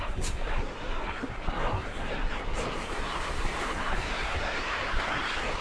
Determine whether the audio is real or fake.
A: fake